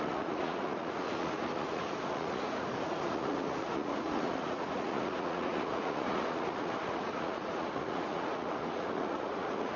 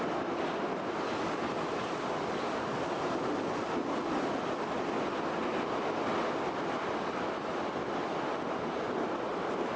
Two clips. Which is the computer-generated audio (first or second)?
first